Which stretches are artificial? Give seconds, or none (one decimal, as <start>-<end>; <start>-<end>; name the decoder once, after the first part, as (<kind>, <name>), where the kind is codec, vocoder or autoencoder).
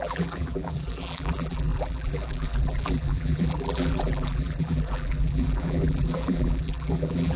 0.0-7.4 (vocoder, BigVGAN v2)